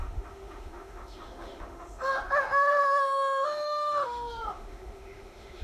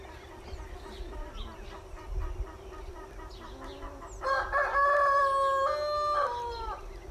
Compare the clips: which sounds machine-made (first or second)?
first